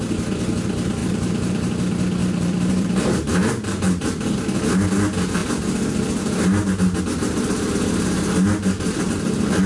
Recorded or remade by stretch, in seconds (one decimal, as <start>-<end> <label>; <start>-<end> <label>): 0.0-1.0 recorded; 1.0-1.7 remade; 1.7-2.2 recorded; 2.2-4.2 remade; 4.2-9.7 recorded